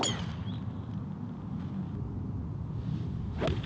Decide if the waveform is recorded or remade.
recorded